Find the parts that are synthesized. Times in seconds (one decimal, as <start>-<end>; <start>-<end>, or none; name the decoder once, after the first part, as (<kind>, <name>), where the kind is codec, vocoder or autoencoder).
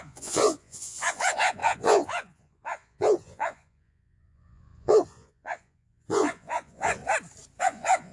0.0-7.0 (vocoder, Vocos); 7.6-8.1